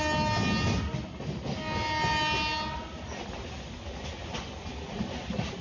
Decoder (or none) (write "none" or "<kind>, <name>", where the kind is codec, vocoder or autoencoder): none